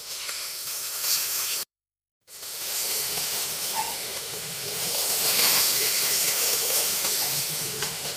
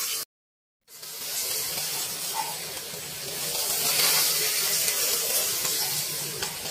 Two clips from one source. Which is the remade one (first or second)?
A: first